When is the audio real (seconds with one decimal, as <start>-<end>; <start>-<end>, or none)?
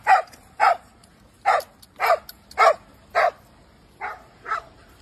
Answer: 1.1-4.1